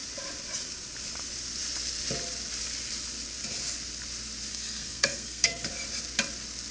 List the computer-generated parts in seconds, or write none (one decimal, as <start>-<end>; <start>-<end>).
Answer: 4.5-5.7